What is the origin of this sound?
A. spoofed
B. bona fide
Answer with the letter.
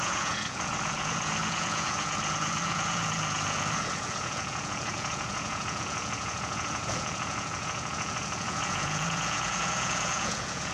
A